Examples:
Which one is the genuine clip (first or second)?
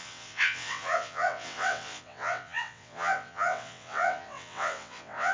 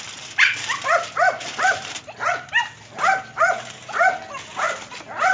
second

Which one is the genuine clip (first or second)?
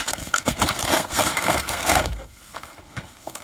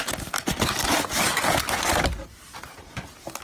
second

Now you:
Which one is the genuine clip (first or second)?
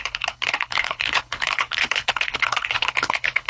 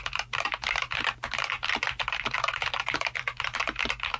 second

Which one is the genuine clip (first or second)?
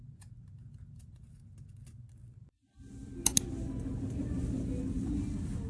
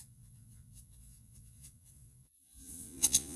first